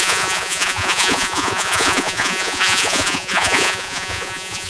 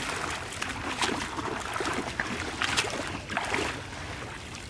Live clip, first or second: second